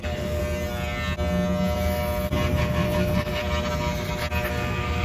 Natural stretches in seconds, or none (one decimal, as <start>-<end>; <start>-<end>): 0.4-2.6; 3.4-4.5